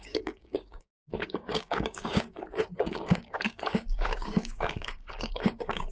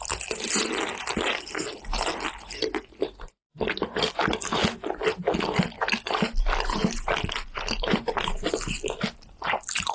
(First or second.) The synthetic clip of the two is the first